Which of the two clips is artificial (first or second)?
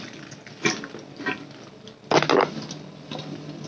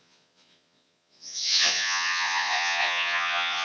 second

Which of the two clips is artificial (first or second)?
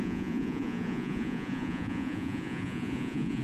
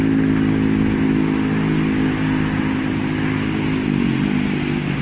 first